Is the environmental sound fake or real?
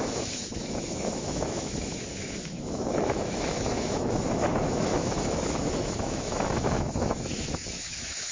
fake